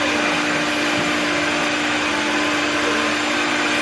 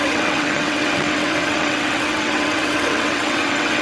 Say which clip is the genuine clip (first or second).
first